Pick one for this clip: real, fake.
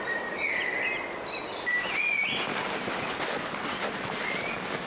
real